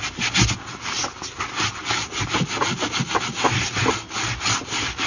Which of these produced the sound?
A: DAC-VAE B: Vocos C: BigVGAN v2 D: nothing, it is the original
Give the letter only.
D